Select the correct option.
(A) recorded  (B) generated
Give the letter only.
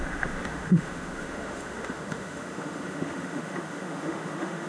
B